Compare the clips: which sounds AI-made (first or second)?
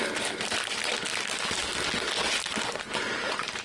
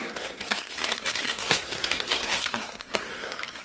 second